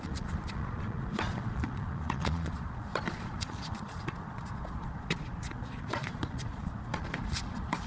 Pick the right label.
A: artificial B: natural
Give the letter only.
A